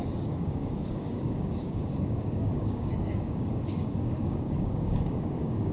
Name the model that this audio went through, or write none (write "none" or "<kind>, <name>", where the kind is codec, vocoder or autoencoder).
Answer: codec, DAC